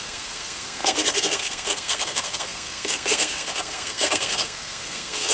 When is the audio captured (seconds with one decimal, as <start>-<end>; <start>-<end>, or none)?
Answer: none